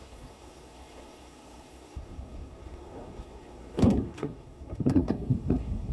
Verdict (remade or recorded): remade